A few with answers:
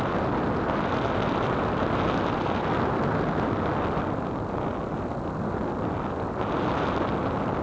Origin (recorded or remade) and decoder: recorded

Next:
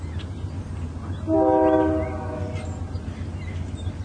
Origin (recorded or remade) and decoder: recorded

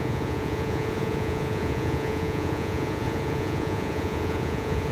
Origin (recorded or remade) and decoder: remade, vocoder, Vocos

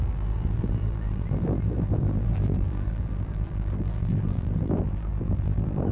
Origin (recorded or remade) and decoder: remade, vocoder, BigVGAN v2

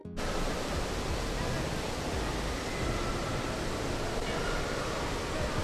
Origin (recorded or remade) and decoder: recorded